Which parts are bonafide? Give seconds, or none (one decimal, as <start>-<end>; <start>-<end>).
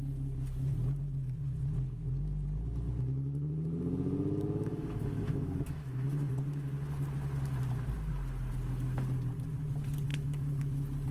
0.0-4.7; 6.3-10.1; 10.6-11.1